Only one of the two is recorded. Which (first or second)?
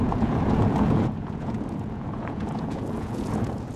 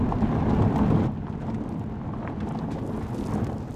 second